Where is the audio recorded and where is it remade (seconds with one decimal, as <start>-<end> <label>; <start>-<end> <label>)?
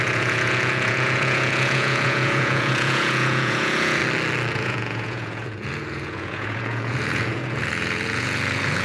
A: 0.0-4.0 remade; 4.0-4.5 recorded; 4.5-8.8 remade